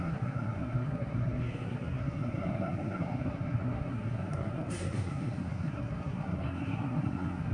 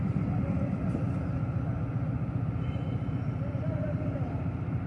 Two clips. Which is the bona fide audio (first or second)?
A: second